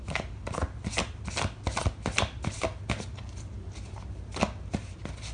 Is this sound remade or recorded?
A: recorded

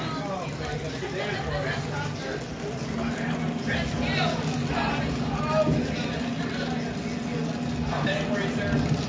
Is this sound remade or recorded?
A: recorded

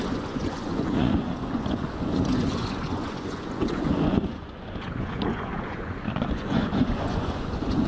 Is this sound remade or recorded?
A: remade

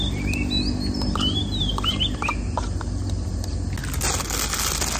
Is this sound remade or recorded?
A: recorded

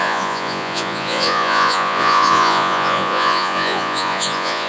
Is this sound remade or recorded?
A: remade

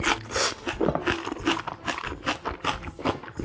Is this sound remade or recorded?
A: recorded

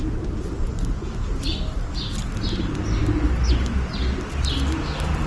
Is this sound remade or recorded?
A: recorded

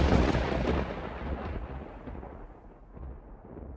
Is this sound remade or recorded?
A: remade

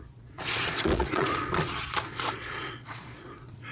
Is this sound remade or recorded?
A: remade